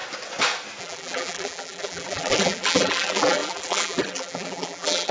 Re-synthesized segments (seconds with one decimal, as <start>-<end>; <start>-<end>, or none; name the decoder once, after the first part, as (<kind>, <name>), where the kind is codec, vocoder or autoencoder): 0.8-5.1 (vocoder, BigVGAN v2)